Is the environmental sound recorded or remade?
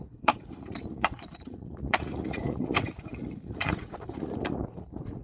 remade